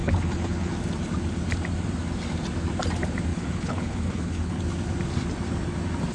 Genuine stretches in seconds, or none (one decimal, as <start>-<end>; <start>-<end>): 0.7-3.3; 4.6-6.1